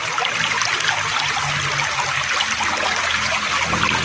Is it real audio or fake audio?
real